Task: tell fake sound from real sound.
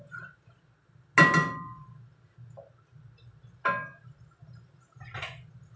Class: real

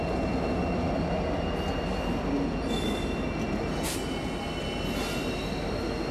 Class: real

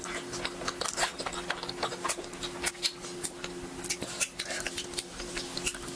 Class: real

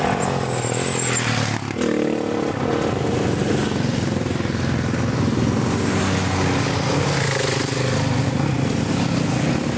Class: real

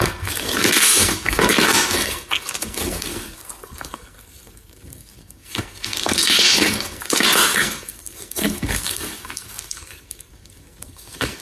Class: fake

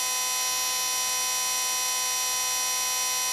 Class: real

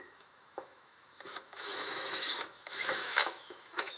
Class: fake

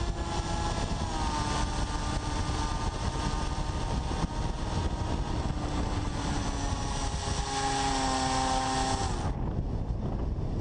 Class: real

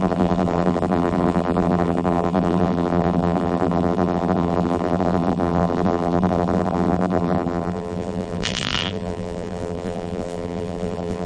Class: fake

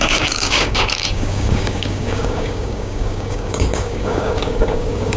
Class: fake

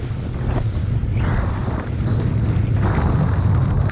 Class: real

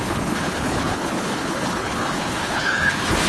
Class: fake